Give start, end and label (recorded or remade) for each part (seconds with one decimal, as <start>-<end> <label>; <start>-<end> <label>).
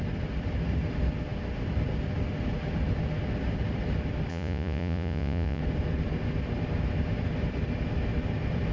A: 0.0-4.3 recorded; 4.3-5.6 remade; 5.6-8.7 recorded